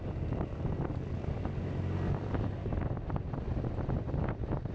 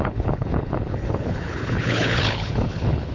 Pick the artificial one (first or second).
second